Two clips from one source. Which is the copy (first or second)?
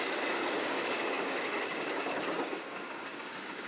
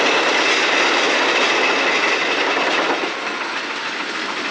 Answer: first